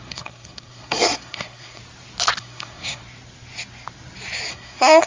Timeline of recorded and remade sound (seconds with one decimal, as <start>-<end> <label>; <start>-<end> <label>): 0.0-1.8 remade; 1.8-2.4 recorded; 2.4-3.0 remade; 3.0-4.5 recorded; 4.5-5.1 remade